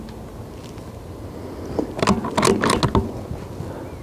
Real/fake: real